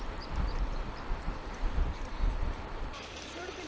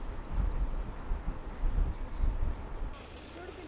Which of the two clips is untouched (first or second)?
second